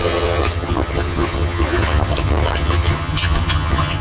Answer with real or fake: fake